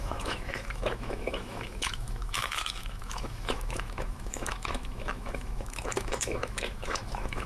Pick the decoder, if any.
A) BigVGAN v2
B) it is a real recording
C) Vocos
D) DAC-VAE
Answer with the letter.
D